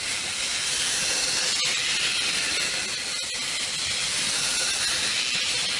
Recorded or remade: recorded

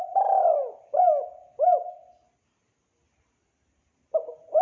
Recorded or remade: recorded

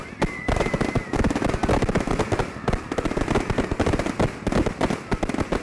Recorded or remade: recorded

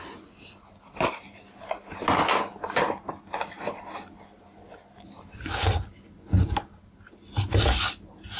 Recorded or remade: recorded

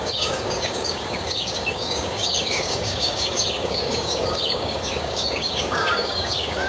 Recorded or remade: remade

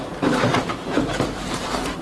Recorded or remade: remade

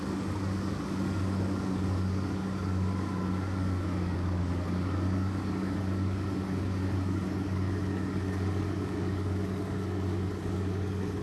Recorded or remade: remade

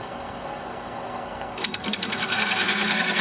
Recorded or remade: remade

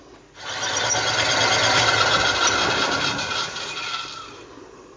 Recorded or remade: remade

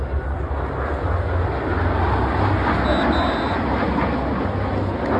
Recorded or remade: recorded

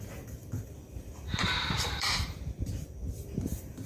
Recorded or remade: remade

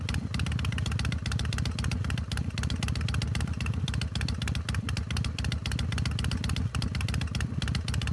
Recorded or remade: recorded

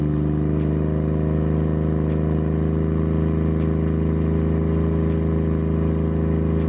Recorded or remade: recorded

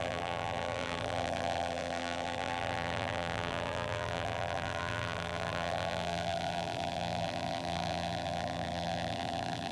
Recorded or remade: remade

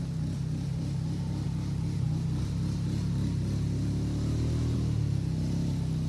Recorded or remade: recorded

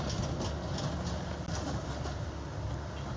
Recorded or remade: recorded